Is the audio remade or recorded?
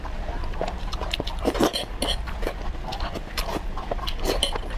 recorded